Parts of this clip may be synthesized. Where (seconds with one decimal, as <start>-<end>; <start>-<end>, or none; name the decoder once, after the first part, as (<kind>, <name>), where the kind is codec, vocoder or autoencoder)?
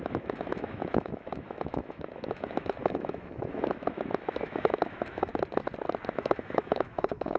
0.0-5.3 (autoencoder, DAC-VAE); 6.1-7.4